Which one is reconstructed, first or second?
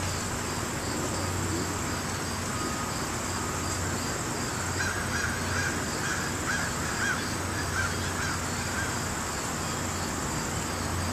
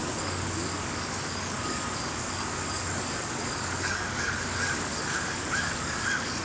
second